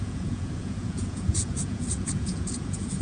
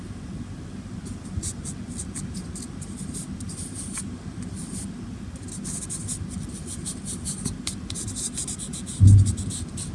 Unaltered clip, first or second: second